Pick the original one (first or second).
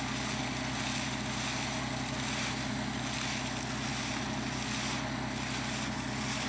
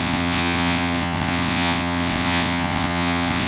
first